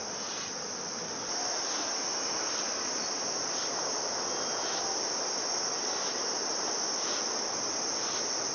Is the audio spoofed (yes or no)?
no